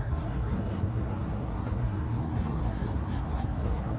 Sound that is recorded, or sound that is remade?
remade